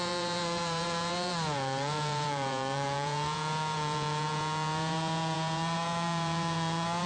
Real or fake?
fake